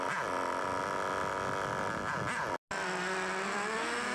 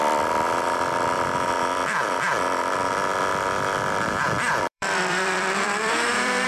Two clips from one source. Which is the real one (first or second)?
first